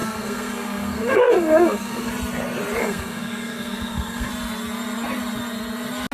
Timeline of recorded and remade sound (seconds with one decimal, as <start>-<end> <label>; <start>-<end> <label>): 0.0-2.1 remade; 2.1-2.8 recorded; 2.8-4.3 remade; 4.3-6.1 recorded